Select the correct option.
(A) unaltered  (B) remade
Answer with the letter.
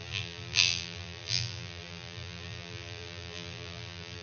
B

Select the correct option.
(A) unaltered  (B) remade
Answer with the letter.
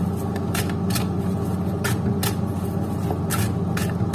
A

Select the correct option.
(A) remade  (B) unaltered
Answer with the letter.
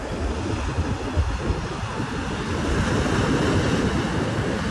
B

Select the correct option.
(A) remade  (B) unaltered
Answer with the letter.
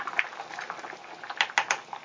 B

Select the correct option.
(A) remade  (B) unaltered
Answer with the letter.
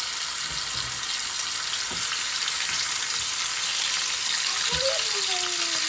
B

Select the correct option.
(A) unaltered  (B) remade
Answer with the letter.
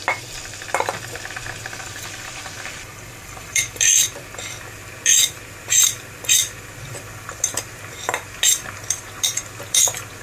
B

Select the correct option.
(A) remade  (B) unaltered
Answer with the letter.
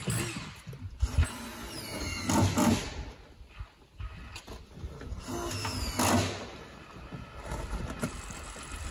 B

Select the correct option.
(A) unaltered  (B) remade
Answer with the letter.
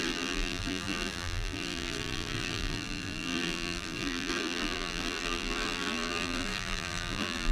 B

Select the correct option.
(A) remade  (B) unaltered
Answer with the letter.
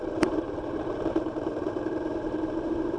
A